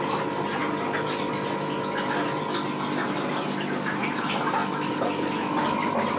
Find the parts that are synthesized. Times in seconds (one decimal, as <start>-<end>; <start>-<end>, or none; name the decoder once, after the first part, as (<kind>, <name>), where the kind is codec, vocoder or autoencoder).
none